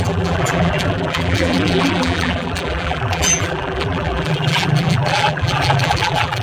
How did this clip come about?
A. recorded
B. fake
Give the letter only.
B